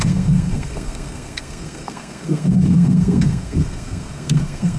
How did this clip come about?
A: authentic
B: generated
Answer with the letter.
B